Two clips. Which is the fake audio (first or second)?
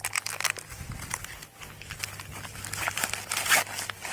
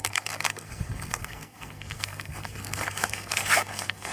second